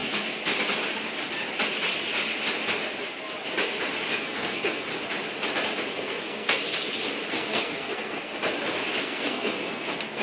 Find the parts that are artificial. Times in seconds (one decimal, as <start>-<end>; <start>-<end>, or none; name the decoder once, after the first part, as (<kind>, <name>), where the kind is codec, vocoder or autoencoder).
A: 4.1-4.9 (codec, SNAC); 5.9-6.6; 7.3-8.3; 9.0-10.2